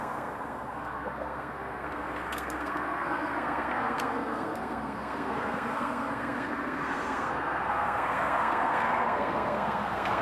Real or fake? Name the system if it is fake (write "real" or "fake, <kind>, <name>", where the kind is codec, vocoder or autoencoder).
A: fake, codec, SNAC